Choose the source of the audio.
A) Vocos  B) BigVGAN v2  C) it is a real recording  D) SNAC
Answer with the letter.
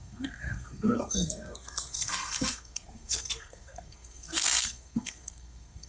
D